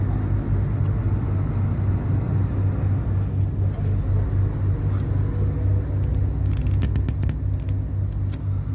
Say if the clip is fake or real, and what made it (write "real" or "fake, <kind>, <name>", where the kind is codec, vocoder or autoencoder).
real